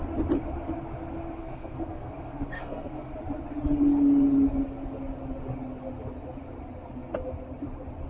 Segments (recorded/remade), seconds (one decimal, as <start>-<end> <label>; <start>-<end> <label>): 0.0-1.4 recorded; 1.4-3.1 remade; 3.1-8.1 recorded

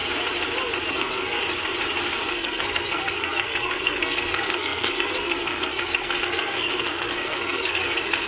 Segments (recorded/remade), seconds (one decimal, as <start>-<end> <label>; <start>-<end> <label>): 0.0-0.9 recorded; 0.9-1.4 remade; 1.4-2.3 recorded; 2.3-8.3 remade

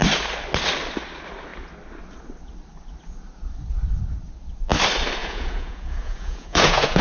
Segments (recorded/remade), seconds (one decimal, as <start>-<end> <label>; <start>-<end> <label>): 0.0-5.2 recorded; 5.2-7.0 remade